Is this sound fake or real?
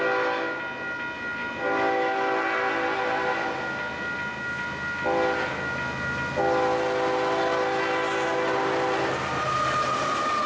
real